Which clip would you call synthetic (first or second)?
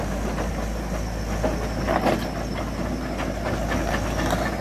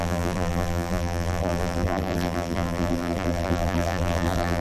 second